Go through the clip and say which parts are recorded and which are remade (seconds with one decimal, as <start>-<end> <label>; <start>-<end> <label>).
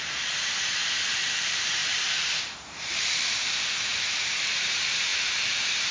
0.0-0.8 remade; 0.8-1.4 recorded; 1.4-5.9 remade